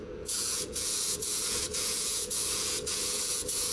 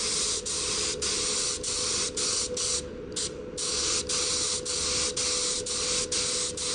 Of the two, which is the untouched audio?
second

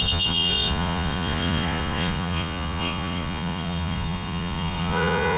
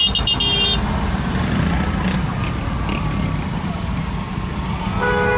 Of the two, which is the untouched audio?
second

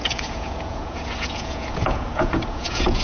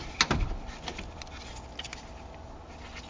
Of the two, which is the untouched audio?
second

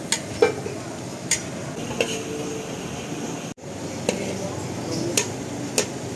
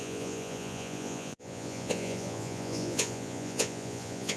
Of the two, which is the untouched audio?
first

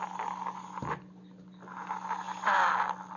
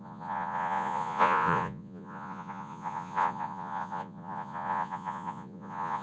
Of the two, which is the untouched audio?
first